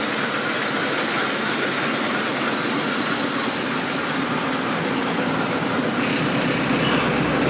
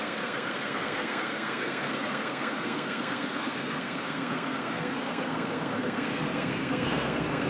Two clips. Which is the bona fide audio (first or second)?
first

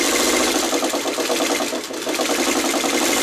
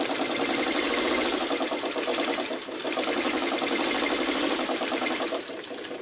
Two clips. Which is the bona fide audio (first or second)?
first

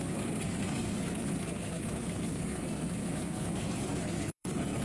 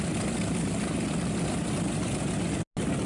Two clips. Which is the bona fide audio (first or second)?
second